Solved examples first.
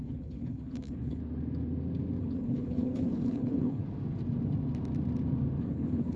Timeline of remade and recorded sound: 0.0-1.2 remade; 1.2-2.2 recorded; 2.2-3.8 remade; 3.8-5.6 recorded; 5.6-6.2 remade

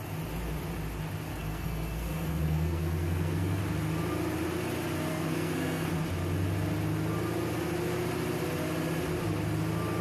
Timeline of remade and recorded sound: 0.0-1.3 recorded; 1.3-3.6 remade; 3.6-5.1 recorded; 5.1-5.9 remade; 5.9-10.0 recorded

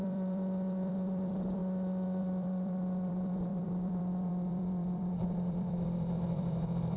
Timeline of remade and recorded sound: 0.0-1.6 remade; 1.6-2.2 recorded; 2.2-7.0 remade

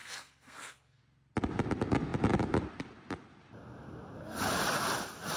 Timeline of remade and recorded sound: 0.0-1.0 remade; 1.0-5.4 recorded

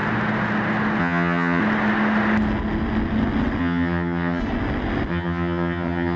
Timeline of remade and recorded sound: 0.0-1.0 recorded; 1.0-1.6 remade; 1.6-3.6 recorded; 3.6-4.4 remade; 4.4-5.1 recorded; 5.1-6.2 remade

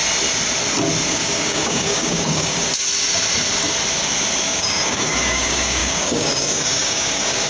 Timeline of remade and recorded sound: 0.0-1.1 recorded; 1.1-2.7 remade; 2.7-4.4 recorded; 4.4-7.5 remade

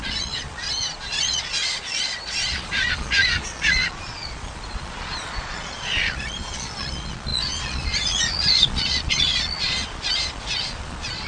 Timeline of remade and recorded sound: 0.0-11.3 remade

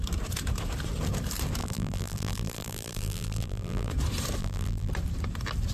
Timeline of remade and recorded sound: 0.0-1.6 recorded; 1.6-3.9 remade; 3.9-4.4 recorded; 4.4-4.9 remade; 4.9-5.7 recorded